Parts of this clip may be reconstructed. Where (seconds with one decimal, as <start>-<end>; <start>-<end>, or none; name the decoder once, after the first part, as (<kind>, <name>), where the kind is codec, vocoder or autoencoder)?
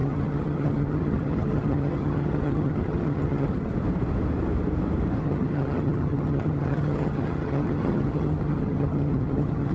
0.0-3.7 (vocoder, HiFi-GAN); 5.2-9.7